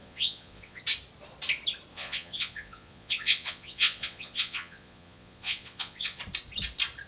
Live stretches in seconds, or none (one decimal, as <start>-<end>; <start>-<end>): 0.8-1.9; 6.2-7.1